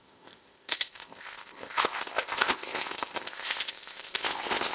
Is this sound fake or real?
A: fake